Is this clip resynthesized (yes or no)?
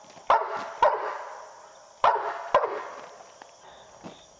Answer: no